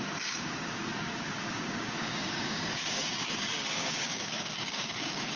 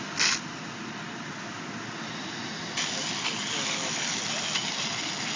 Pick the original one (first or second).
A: second